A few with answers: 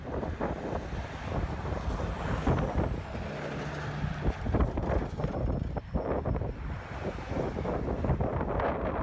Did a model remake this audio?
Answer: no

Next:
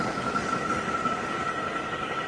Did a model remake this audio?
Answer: yes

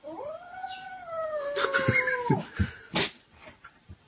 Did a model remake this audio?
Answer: no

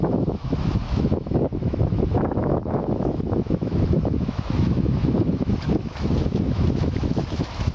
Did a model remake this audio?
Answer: yes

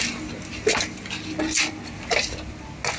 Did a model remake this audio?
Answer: no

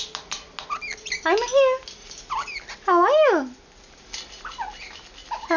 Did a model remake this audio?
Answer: no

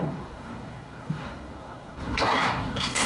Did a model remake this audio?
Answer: yes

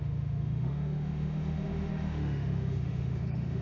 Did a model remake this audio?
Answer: yes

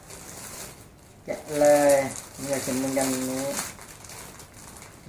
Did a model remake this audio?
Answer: no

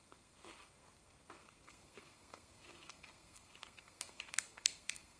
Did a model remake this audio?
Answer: yes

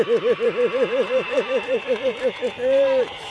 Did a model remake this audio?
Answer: yes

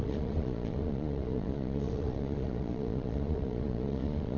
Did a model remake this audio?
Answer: yes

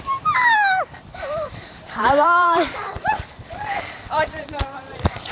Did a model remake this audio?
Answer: yes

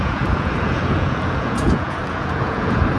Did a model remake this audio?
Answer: yes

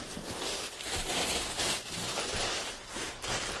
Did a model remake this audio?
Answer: no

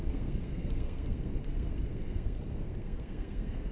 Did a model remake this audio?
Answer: yes